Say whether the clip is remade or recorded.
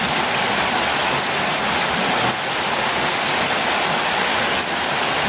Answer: recorded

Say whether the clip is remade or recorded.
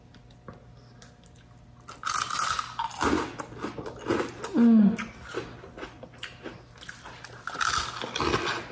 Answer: recorded